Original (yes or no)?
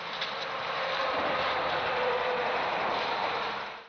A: yes